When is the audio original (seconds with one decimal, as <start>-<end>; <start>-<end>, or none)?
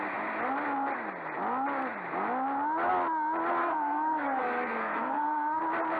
0.0-3.6; 5.6-6.0